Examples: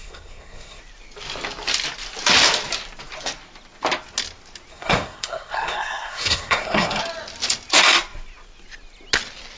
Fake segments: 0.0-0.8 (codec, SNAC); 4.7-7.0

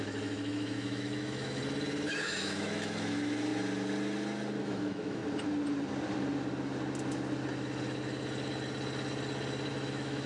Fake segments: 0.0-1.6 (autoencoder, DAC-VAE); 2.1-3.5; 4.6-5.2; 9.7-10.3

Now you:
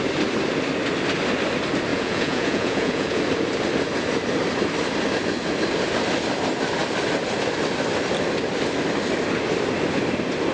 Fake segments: 1.9-3.2 (vocoder, Vocos)

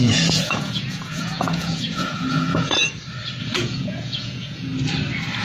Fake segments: 0.0-2.8 (vocoder, Vocos); 3.4-4.7

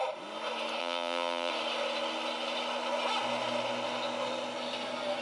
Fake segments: 0.8-1.5 (vocoder, BigVGAN v2)

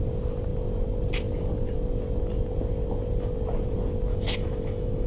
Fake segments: 4.1-5.1 (autoencoder, DAC-VAE)